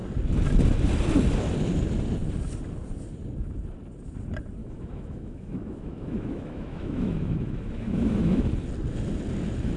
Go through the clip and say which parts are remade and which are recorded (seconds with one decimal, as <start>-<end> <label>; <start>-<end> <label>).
0.0-4.6 recorded; 4.6-8.5 remade; 8.5-9.8 recorded